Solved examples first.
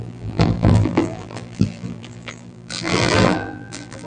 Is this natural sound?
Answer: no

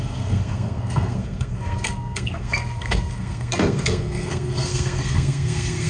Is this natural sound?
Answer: no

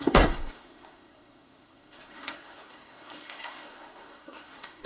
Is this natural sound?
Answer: no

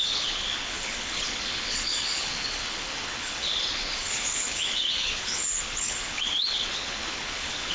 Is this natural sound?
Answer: no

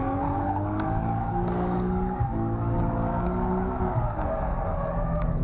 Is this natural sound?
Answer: no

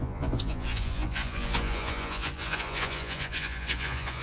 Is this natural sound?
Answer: no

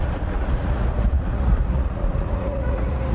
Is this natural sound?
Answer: no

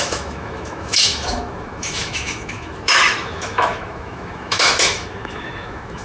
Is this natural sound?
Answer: no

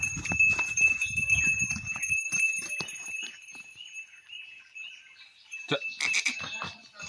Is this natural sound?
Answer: no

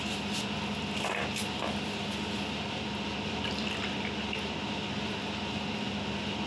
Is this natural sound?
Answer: yes